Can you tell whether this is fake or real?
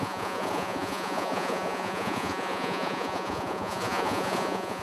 fake